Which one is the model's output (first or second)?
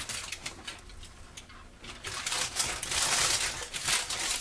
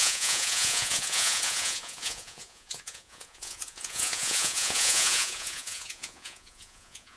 second